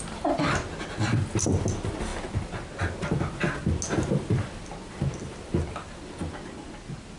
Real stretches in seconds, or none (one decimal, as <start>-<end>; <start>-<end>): 0.0-7.2